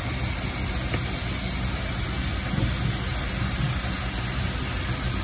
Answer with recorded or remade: recorded